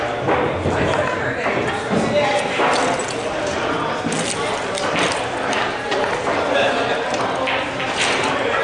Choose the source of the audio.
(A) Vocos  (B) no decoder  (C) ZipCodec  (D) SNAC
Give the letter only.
B